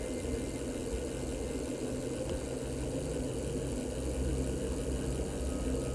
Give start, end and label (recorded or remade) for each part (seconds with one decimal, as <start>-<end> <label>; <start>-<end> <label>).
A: 0.0-5.9 recorded